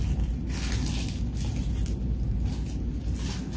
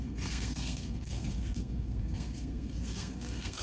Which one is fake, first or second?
second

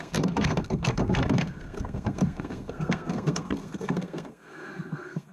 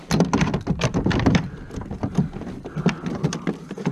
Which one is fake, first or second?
first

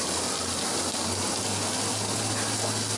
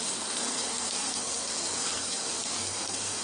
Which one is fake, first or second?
second